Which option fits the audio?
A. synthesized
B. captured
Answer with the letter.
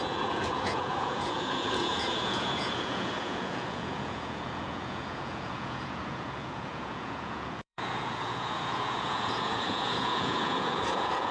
A